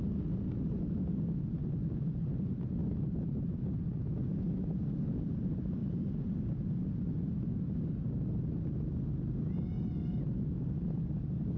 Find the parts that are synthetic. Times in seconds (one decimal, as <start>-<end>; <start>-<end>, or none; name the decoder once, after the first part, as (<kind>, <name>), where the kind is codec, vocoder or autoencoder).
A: 2.8-3.6 (vocoder, BigVGAN v2)